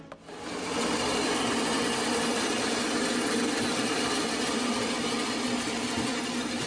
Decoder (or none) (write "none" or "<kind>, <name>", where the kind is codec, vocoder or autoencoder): none